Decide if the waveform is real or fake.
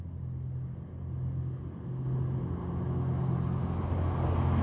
real